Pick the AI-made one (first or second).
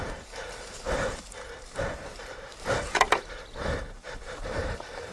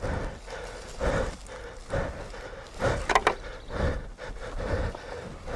first